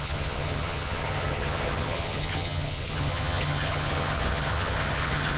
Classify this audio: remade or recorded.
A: remade